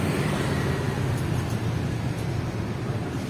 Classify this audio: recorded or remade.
recorded